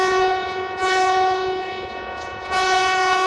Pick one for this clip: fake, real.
fake